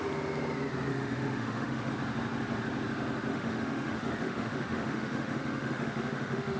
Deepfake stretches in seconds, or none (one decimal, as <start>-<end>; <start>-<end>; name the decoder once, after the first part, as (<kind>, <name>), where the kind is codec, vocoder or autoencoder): 0.9-1.9 (autoencoder, DAC-VAE); 3.3-6.6